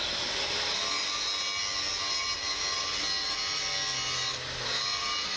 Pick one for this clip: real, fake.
real